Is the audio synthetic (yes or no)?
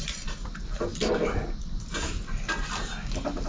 no